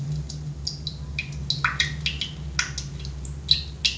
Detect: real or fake real